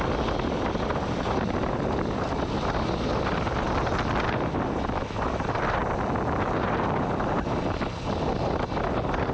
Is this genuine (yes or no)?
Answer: yes